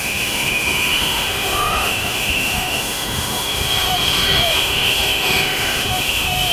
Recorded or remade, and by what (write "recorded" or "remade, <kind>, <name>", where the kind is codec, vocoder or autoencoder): remade, autoencoder, DAC-VAE